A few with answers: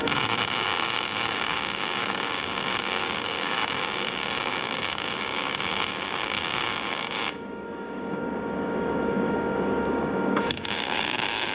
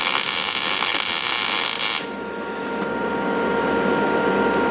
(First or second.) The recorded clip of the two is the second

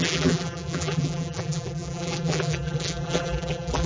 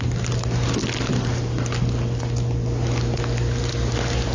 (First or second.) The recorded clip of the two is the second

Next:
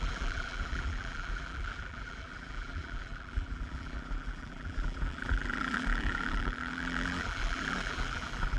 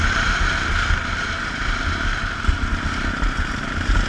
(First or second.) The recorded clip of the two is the second